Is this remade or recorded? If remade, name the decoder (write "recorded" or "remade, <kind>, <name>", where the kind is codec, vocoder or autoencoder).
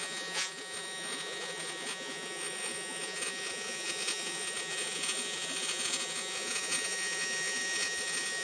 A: remade, vocoder, Vocos